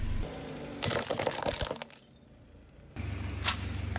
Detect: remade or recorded recorded